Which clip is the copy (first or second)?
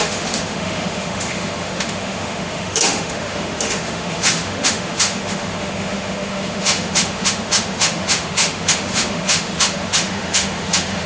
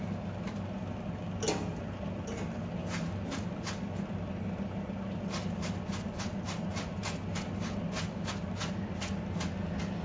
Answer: first